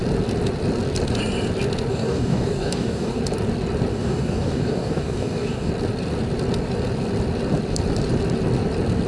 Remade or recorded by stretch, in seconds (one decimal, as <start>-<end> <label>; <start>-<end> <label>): 0.0-1.9 recorded; 1.9-3.2 remade; 3.2-3.9 recorded; 3.9-5.7 remade; 5.7-9.1 recorded